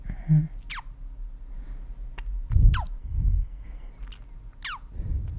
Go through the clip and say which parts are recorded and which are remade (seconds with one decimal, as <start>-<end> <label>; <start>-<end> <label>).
0.0-3.0 recorded; 3.0-3.9 remade; 3.9-5.4 recorded